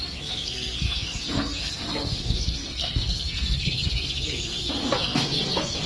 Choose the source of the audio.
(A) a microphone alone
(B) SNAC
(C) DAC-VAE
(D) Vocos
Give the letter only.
B